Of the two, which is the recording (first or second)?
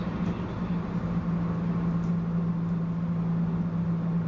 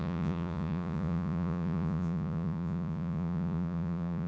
first